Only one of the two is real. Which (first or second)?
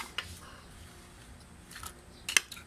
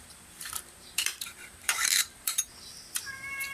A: first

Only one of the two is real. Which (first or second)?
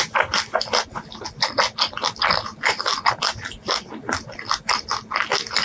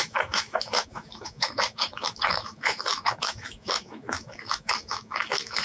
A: first